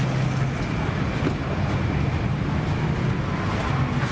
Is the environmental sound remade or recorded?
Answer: recorded